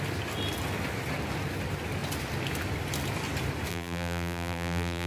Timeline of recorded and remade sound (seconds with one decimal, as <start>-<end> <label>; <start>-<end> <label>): 0.0-3.7 recorded; 3.7-5.1 remade